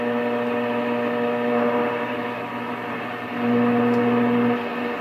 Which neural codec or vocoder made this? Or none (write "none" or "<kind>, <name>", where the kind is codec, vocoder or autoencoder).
vocoder, BigVGAN v2